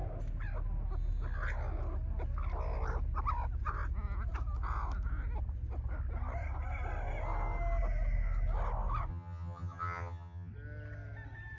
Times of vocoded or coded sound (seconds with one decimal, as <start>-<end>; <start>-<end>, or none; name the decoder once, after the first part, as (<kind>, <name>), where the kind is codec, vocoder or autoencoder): 9.1-10.5 (vocoder, HiFi-GAN)